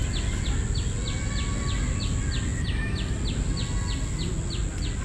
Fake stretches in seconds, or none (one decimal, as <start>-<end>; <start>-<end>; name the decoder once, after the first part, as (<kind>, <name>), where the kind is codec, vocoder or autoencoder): none